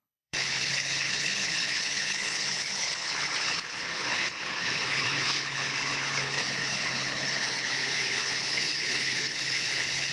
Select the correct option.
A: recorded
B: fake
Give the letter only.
B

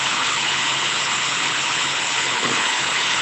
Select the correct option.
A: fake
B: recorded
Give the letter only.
A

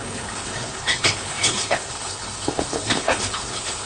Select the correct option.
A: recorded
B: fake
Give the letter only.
B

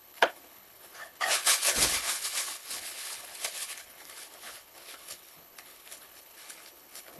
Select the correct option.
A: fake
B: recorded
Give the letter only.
A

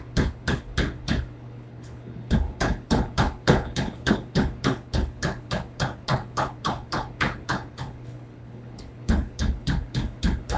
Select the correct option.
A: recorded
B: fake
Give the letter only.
B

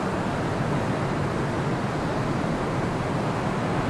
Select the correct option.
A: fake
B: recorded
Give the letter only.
B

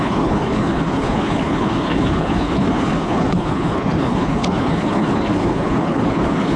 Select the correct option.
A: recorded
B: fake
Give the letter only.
B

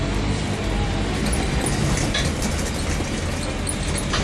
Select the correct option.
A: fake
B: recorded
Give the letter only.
B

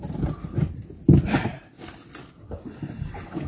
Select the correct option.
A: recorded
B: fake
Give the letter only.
A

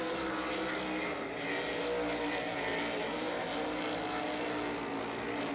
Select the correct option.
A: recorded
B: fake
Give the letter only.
A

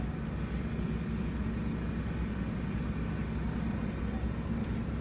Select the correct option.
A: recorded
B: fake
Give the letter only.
A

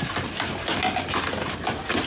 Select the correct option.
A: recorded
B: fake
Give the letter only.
A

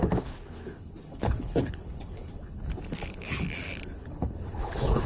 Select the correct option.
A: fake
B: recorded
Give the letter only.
A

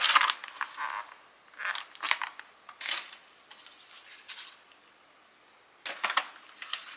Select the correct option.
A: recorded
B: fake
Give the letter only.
A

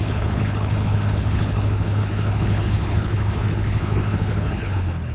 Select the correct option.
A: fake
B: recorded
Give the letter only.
A